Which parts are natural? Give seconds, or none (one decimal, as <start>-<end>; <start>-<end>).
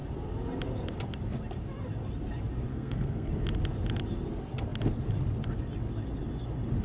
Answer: 0.0-2.7; 3.3-6.8